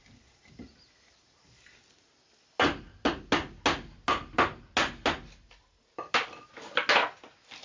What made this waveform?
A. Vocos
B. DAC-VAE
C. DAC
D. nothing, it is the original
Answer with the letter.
D